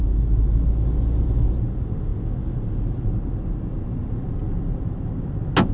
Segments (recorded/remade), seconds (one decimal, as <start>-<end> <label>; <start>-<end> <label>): 0.0-5.7 recorded